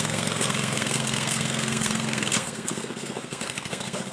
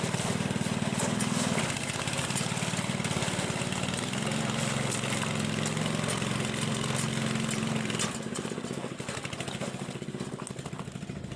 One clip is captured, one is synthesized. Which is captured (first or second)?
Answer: second